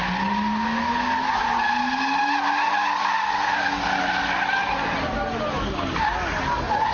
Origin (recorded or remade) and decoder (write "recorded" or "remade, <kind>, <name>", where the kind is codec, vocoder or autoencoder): recorded